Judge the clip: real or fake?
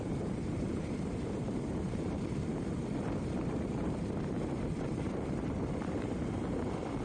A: fake